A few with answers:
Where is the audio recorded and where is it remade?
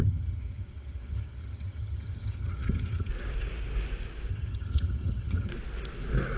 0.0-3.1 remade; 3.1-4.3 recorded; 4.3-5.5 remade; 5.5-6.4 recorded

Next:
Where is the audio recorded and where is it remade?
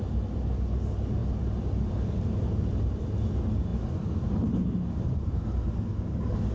0.0-6.5 recorded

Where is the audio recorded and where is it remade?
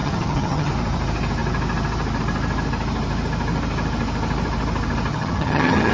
0.0-0.7 remade; 0.7-5.1 recorded; 5.1-5.9 remade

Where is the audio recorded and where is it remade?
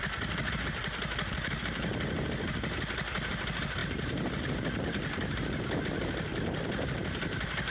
0.0-7.7 recorded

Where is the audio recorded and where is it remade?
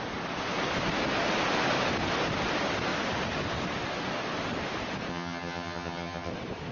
0.0-5.1 recorded; 5.1-6.3 remade; 6.3-6.7 recorded